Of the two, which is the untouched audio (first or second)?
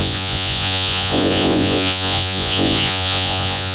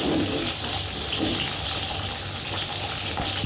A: second